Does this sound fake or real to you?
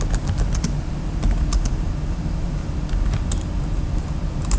real